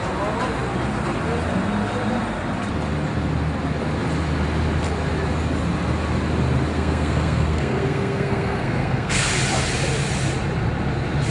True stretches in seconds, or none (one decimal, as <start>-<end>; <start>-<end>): 0.0-6.7; 9.3-11.3